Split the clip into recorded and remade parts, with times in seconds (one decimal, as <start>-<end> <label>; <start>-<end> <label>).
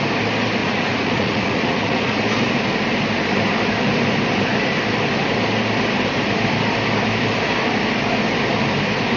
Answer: 0.0-0.6 recorded; 0.6-2.2 remade; 2.2-9.2 recorded